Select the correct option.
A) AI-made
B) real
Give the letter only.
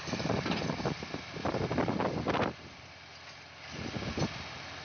B